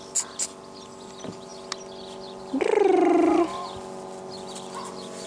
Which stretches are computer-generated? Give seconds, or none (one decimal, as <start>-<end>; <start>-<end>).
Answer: none